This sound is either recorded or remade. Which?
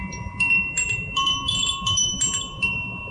remade